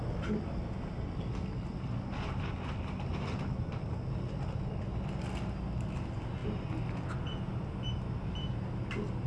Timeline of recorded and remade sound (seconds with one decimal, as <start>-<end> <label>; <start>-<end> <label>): 0.0-9.3 recorded